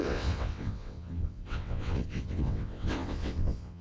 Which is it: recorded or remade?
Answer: remade